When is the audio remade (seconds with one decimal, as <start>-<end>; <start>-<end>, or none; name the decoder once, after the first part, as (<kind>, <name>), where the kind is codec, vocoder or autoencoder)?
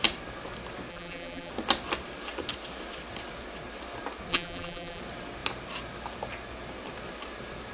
0.9-1.5 (vocoder, BigVGAN v2); 4.3-5.0